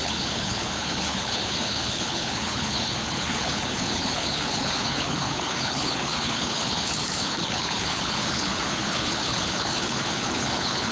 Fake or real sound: fake